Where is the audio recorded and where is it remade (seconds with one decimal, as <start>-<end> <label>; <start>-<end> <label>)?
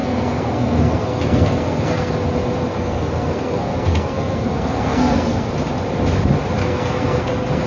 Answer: 0.0-2.1 remade; 2.1-2.7 recorded; 2.7-5.5 remade; 5.5-6.6 recorded; 6.6-7.7 remade